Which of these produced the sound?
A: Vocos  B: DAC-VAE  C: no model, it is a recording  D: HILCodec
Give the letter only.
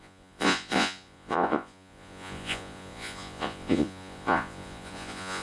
A